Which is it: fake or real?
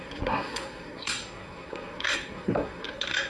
fake